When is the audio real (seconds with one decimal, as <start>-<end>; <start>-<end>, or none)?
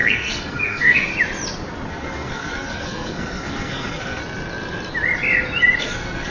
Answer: 1.1-1.9; 4.2-5.8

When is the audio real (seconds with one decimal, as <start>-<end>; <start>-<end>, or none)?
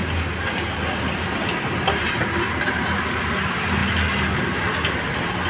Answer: 0.0-5.5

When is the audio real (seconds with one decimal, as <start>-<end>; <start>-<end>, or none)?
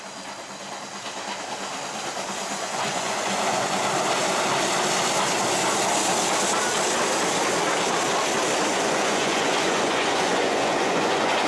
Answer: 0.0-2.5; 3.8-8.7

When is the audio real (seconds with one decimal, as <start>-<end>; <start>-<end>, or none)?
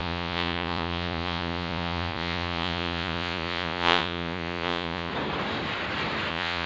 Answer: 5.1-6.3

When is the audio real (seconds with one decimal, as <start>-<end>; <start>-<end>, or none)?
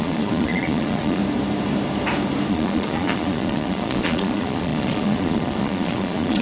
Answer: 1.2-2.5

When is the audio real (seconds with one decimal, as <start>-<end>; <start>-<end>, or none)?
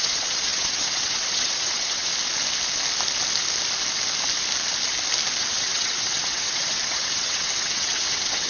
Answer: 2.1-5.4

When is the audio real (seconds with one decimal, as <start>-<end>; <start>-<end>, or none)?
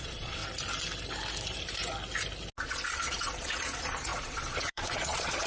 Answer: 0.4-2.6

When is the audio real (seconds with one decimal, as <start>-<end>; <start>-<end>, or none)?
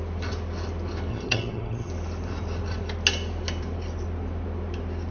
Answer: 0.0-1.1; 1.9-5.1